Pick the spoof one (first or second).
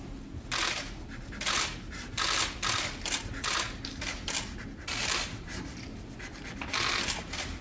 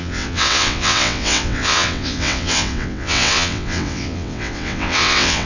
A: second